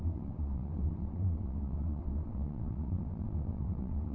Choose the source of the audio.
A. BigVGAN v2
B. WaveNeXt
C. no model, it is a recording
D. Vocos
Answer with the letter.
B